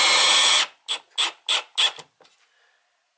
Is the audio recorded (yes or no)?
yes